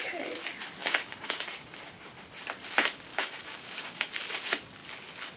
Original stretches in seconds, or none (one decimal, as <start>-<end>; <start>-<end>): 0.0-0.8; 1.4-3.1; 4.1-5.4